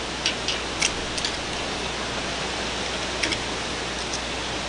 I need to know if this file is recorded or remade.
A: recorded